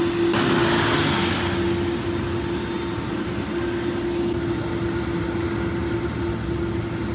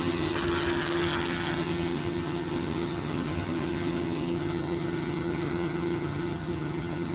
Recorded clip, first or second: first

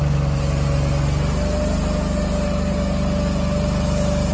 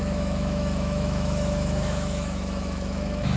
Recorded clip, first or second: first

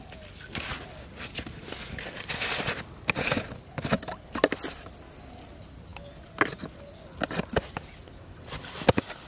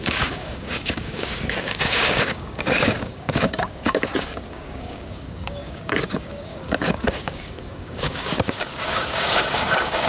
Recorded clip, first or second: first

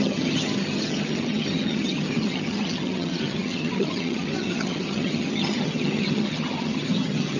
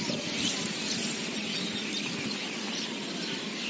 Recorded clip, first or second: second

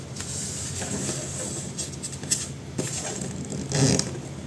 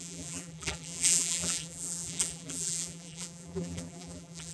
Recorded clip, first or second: first